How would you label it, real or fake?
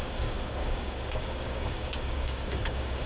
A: fake